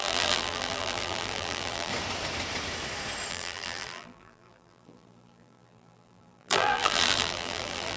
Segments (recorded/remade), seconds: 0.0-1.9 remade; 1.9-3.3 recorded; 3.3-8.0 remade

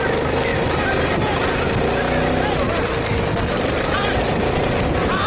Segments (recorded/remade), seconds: 0.0-5.3 recorded